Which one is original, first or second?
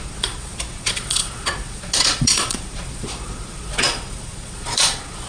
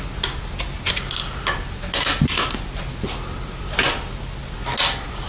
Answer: second